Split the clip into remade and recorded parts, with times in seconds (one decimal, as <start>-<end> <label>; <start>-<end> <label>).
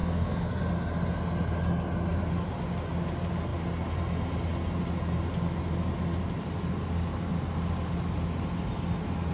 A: 0.0-0.6 remade; 0.6-9.3 recorded